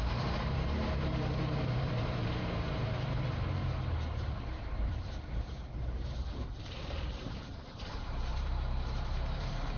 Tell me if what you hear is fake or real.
fake